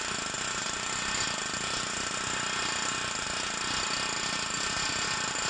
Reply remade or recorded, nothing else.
recorded